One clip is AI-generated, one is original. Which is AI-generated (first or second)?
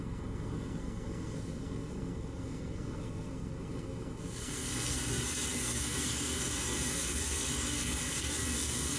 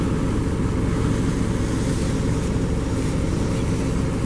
first